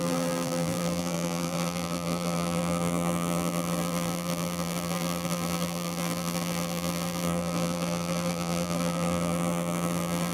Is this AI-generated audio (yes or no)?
yes